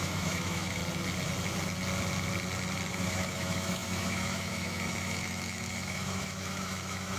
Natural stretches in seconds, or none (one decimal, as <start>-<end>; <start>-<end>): 0.8-2.9